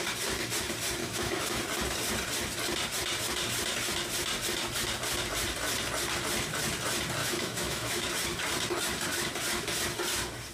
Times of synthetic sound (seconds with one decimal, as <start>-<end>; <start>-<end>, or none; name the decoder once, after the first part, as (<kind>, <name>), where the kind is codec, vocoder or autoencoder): 1.0-1.6 (autoencoder, DAC-VAE); 7.2-8.1